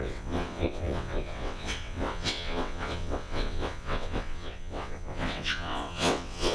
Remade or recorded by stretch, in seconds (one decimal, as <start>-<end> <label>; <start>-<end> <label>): 0.0-6.5 remade